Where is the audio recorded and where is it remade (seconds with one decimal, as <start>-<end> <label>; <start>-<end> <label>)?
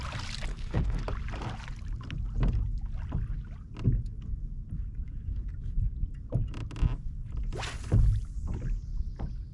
0.0-0.5 recorded; 0.5-1.0 remade; 1.0-9.5 recorded